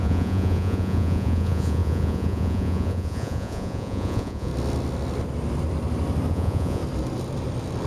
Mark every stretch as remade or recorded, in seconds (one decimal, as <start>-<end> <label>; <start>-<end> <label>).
0.0-4.5 remade; 4.5-6.3 recorded; 6.3-6.8 remade; 6.8-7.9 recorded